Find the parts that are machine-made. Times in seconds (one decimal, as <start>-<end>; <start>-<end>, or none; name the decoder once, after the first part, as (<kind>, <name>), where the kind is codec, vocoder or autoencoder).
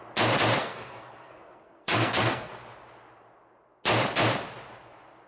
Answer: 0.6-2.5 (codec, SNAC)